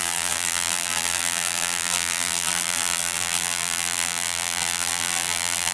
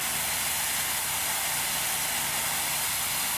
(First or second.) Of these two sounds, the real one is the second